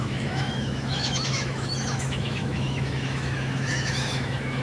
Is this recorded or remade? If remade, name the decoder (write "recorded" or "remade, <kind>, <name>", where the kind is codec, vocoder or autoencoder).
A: remade, autoencoder, DAC-VAE